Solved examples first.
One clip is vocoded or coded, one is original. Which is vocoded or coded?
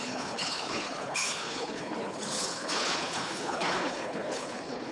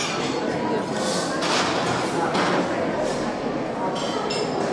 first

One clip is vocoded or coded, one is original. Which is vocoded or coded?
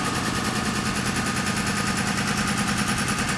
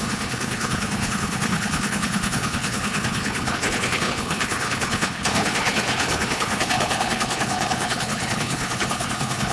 second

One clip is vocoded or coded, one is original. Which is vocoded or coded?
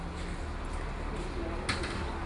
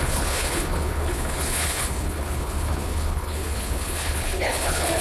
second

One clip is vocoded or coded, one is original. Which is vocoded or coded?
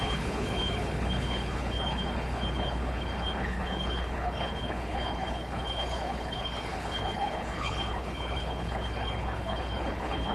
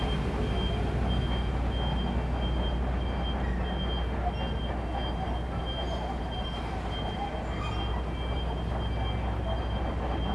first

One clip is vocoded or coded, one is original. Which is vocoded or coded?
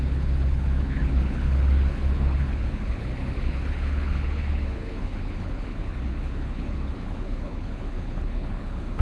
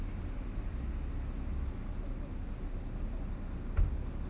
first